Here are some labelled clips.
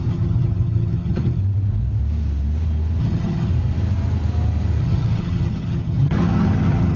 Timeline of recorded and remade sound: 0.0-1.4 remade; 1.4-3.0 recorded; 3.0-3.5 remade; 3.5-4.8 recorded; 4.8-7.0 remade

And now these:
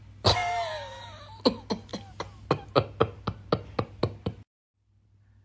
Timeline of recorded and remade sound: 0.0-5.4 recorded

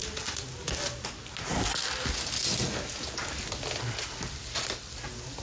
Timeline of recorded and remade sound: 0.0-5.4 recorded

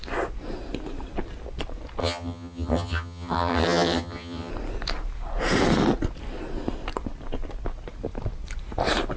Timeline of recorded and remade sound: 0.0-2.0 recorded; 2.0-4.5 remade; 4.5-9.2 recorded

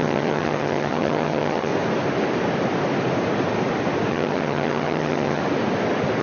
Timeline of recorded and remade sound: 0.0-1.7 remade; 1.7-4.1 recorded; 4.1-5.4 remade; 5.4-6.2 recorded

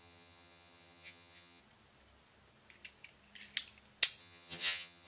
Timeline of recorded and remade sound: 0.0-1.6 remade; 1.6-4.2 recorded; 4.2-5.1 remade

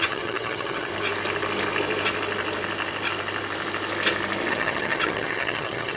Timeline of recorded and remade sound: 0.0-0.9 remade; 0.9-4.5 recorded; 4.5-6.0 remade